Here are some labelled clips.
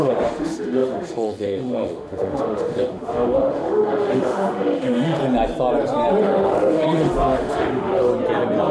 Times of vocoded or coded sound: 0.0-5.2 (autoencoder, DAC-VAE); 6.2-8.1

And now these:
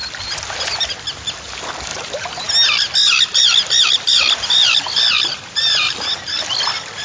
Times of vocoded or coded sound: 5.3-6.2 (vocoder, BigVGAN v2)

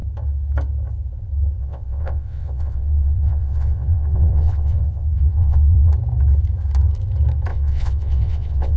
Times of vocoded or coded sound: 1.6-5.9 (vocoder, WaveNeXt); 7.5-8.8

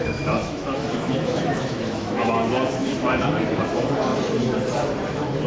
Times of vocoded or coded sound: 0.0-4.1 (autoencoder, DAC-VAE); 5.1-5.5

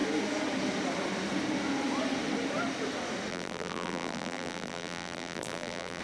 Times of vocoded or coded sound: 3.3-6.0 (vocoder, BigVGAN v2)

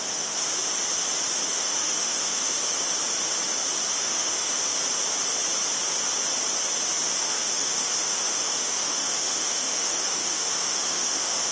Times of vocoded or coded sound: 0.0-0.4 (autoencoder, DAC-VAE); 1.5-2.7; 4.0-4.6; 7.2-11.5

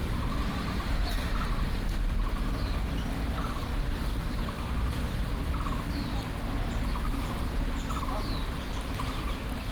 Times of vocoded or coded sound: 0.0-1.7 (vocoder, BigVGAN v2); 3.7-5.1